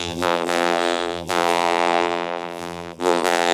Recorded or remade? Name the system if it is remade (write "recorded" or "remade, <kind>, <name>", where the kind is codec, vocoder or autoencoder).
remade, vocoder, BigVGAN v2